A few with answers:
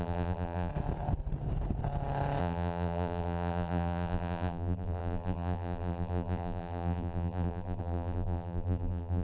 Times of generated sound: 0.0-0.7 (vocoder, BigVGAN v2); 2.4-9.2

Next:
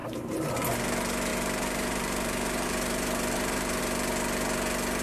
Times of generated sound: 0.0-0.5 (vocoder, BigVGAN v2); 1.3-3.8

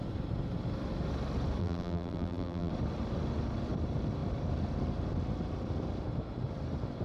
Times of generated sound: 1.6-2.7 (vocoder, BigVGAN v2)